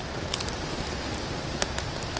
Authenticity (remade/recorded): recorded